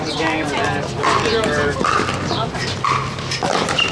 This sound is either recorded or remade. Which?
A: recorded